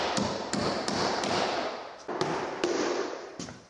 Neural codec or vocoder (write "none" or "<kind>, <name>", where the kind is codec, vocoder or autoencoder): none